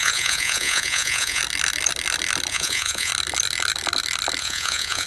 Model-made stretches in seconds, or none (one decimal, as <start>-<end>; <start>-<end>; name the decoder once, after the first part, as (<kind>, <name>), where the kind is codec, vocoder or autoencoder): 0.0-1.4 (vocoder, Vocos); 2.5-3.1; 4.4-5.1